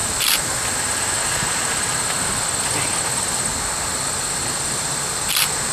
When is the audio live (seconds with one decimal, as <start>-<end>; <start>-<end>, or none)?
0.0-5.7